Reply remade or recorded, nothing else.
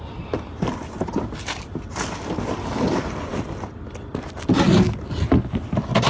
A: recorded